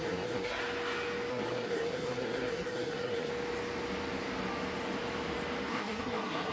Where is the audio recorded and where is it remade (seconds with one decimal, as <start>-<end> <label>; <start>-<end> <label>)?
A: 0.0-0.6 remade; 0.6-1.3 recorded; 1.3-3.3 remade; 3.3-5.7 recorded; 5.7-6.5 remade